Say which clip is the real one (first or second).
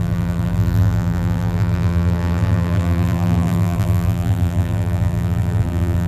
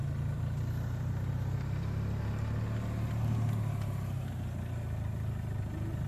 second